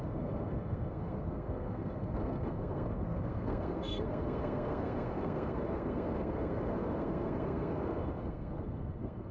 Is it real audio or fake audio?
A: fake